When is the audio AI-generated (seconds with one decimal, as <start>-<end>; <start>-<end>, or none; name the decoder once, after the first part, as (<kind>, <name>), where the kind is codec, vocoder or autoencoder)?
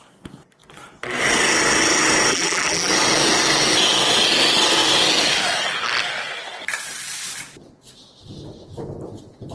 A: 2.3-2.9 (vocoder, BigVGAN v2)